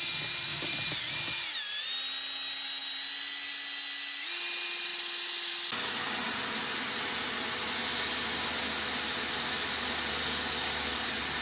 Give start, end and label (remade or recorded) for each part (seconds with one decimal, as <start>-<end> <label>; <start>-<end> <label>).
0.0-0.5 recorded; 0.5-1.2 remade; 1.2-11.4 recorded